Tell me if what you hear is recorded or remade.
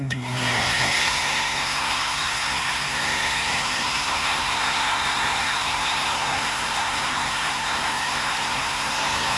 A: remade